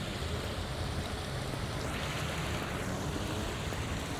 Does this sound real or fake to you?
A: real